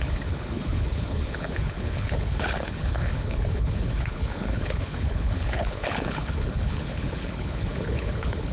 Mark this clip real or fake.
fake